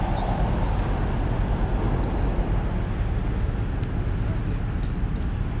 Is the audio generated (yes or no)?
no